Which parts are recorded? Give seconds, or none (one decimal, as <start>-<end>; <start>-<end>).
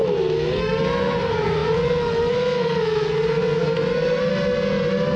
4.3-5.2